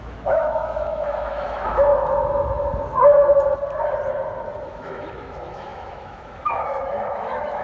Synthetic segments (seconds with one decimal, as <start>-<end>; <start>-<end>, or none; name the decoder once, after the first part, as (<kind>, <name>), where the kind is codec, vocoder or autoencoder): 0.0-1.9 (autoencoder, DAC-VAE); 4.7-7.6

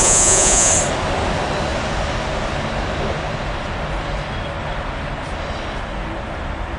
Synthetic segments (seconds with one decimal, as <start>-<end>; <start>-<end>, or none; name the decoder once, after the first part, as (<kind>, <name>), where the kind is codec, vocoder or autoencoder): 0.0-0.7 (vocoder, Vocos)

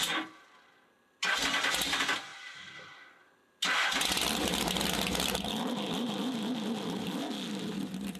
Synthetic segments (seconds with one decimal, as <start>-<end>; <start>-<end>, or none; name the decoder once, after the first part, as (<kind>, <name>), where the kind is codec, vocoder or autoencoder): none

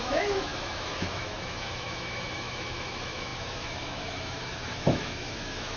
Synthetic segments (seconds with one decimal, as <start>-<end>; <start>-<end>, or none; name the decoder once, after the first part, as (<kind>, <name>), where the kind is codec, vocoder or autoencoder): 0.0-5.8 (autoencoder, DAC-VAE)

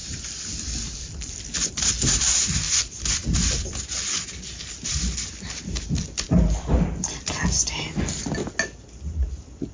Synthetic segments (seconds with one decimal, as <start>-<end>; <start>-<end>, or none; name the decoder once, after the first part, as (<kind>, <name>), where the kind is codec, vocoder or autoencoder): none

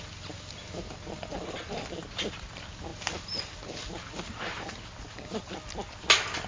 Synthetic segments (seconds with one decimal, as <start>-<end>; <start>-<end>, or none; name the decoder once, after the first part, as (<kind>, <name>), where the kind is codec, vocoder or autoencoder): none

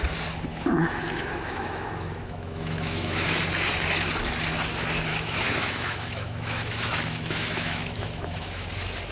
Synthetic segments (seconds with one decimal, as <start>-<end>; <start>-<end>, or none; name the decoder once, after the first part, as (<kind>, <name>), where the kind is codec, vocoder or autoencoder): 0.5-3.4 (autoencoder, DAC-VAE); 5.1-8.7

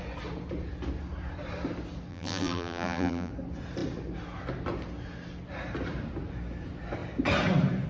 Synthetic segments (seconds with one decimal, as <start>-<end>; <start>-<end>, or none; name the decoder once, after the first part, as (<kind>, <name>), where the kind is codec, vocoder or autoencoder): 2.1-3.3 (vocoder, BigVGAN v2)